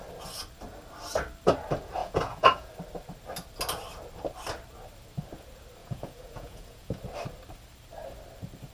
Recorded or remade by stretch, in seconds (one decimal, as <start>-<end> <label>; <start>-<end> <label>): 0.0-2.0 recorded; 2.0-2.7 remade; 2.7-5.8 recorded; 5.8-7.0 remade; 7.0-8.7 recorded